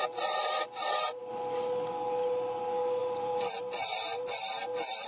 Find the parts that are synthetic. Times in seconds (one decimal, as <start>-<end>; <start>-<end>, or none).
0.0-1.2; 3.0-5.1